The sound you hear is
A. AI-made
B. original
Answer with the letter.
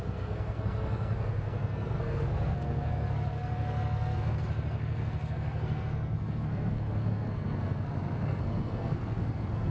A